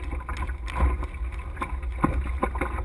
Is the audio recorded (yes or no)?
yes